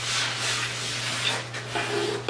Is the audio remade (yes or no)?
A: no